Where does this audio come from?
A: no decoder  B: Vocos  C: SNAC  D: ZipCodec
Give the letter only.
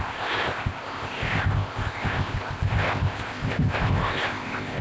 D